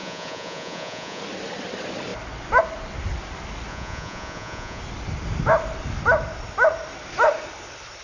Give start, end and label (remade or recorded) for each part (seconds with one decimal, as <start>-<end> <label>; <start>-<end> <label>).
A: 0.0-1.2 remade; 1.2-3.7 recorded; 3.7-4.8 remade; 4.8-8.0 recorded